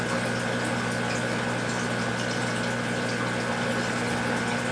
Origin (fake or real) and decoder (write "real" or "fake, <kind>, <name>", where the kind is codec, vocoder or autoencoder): real